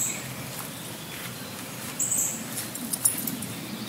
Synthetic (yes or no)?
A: yes